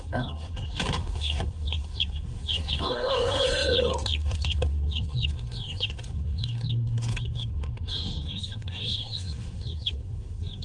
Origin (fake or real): fake